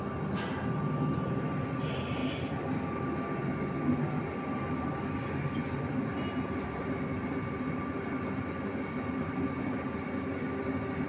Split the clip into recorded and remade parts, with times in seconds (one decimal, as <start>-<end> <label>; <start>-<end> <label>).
0.0-11.1 recorded